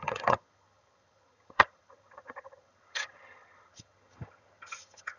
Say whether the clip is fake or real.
fake